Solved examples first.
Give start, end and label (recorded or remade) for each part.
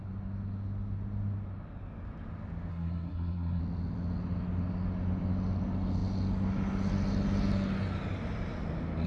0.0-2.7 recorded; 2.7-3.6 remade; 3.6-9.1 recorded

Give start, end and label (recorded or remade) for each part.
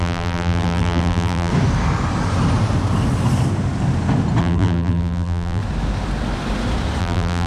0.0-1.5 remade; 1.5-4.4 recorded; 4.4-5.6 remade; 5.6-7.0 recorded; 7.0-7.5 remade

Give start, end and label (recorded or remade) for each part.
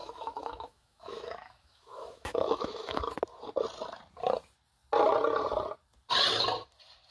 0.0-3.0 remade; 3.0-7.1 recorded